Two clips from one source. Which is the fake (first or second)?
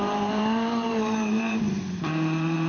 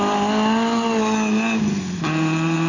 first